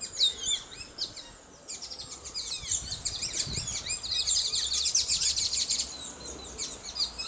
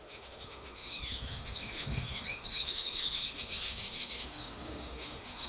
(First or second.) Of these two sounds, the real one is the first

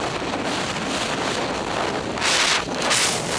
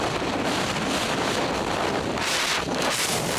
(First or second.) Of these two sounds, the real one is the first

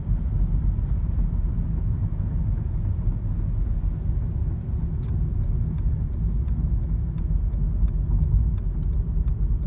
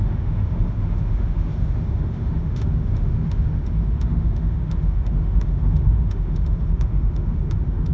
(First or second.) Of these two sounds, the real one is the first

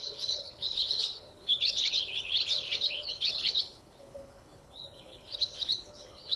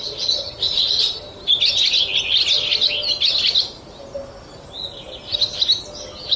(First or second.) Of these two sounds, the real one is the second